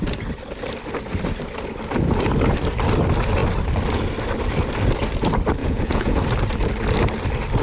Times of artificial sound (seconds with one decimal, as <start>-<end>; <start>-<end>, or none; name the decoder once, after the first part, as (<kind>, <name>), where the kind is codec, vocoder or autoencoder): 5.6-6.2 (vocoder, Vocos)

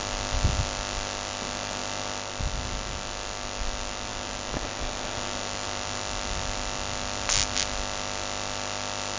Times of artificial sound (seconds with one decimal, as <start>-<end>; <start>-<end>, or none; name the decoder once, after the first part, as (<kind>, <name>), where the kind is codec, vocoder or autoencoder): none